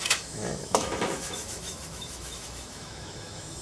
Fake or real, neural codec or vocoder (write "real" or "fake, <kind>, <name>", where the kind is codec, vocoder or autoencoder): fake, autoencoder, DAC-VAE